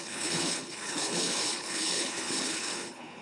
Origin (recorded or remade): remade